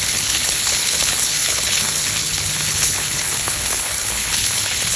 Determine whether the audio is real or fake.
fake